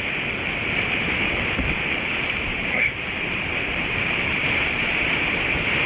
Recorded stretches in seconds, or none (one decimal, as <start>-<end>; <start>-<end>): 0.0-2.5; 5.0-5.9